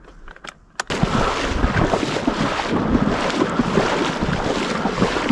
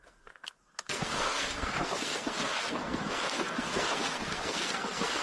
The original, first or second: first